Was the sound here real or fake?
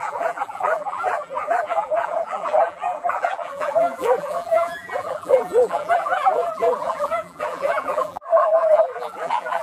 fake